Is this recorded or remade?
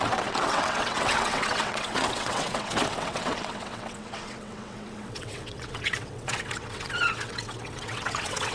remade